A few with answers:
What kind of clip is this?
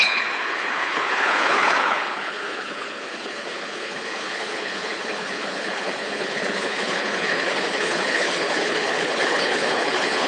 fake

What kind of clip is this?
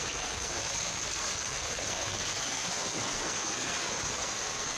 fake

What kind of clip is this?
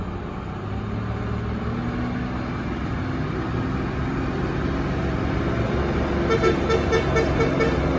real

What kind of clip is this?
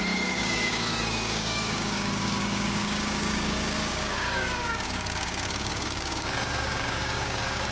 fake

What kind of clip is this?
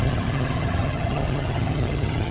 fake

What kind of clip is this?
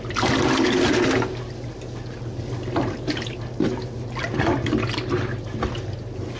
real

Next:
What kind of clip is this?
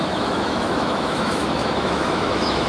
fake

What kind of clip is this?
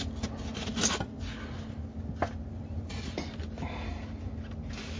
real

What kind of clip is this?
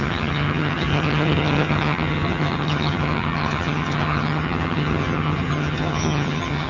fake